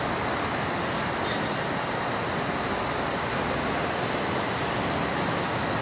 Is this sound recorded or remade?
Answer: recorded